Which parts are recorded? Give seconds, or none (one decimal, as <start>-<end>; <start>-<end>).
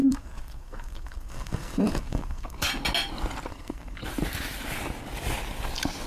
2.7-3.5; 4.0-6.1